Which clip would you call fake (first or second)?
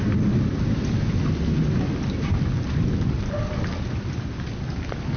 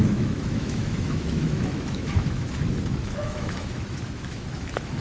second